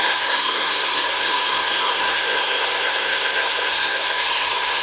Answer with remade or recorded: remade